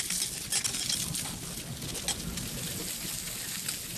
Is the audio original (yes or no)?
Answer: yes